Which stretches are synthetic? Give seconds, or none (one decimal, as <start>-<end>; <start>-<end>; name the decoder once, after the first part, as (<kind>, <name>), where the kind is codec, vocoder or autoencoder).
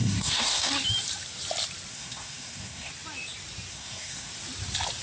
0.0-0.7 (codec, SNAC); 1.9-2.9; 3.7-4.3